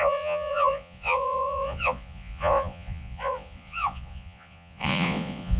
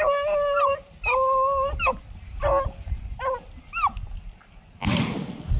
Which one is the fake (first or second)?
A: first